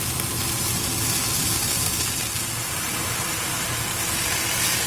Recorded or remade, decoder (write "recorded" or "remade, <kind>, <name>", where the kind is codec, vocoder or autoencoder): recorded